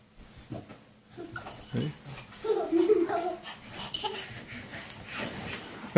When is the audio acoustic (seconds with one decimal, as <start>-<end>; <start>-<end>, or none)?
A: 0.0-6.0